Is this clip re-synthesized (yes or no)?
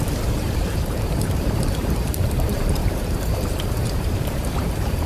yes